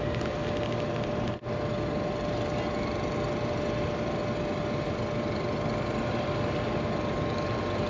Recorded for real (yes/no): yes